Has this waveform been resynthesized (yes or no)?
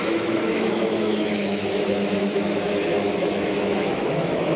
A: yes